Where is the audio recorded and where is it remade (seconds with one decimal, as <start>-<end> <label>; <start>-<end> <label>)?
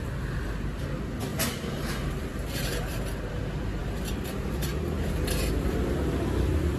0.0-1.3 recorded; 1.3-3.3 remade; 3.3-3.8 recorded; 3.8-4.3 remade; 4.3-6.8 recorded